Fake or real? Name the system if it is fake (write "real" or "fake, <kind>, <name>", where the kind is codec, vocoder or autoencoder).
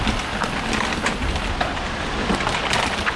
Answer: real